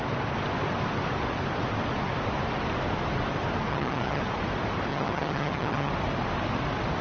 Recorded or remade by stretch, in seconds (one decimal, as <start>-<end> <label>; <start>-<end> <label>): 0.0-3.7 recorded; 3.7-4.2 remade; 4.2-4.9 recorded; 4.9-5.9 remade; 5.9-7.0 recorded